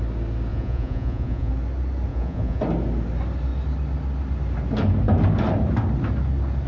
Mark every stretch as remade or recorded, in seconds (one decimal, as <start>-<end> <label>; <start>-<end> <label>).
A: 0.0-0.5 recorded; 0.5-1.5 remade; 1.5-2.1 recorded; 2.1-2.6 remade; 2.6-6.7 recorded